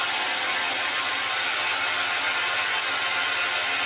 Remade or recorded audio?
recorded